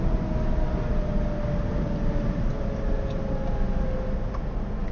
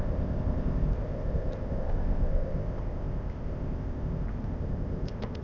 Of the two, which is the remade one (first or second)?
second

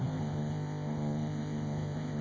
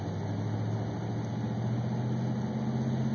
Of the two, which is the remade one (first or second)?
first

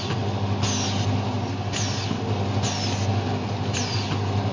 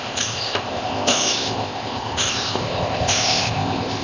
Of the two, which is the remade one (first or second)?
second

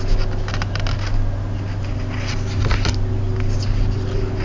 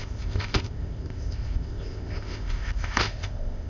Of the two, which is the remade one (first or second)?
second